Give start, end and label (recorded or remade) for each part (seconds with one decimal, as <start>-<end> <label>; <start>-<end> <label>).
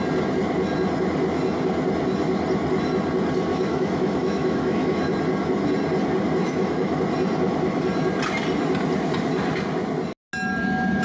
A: 0.0-3.5 recorded; 3.5-5.1 remade; 5.1-6.4 recorded; 6.4-7.0 remade; 7.0-11.0 recorded